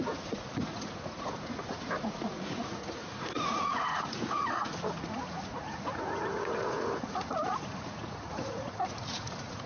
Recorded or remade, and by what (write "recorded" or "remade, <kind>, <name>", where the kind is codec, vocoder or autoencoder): remade, vocoder, Vocos